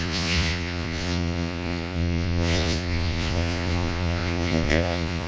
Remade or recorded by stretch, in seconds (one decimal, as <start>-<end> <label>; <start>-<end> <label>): 0.0-5.3 remade